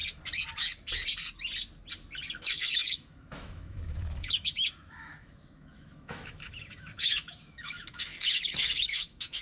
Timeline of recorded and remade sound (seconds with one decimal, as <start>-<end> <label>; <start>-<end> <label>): 0.0-2.3 recorded; 2.3-9.4 remade